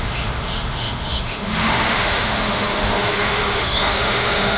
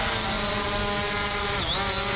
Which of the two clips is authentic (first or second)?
second